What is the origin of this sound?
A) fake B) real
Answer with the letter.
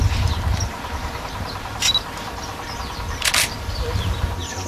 B